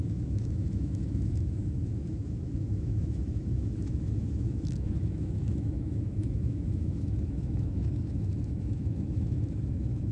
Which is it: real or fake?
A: fake